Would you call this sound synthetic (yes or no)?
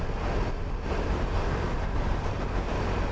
yes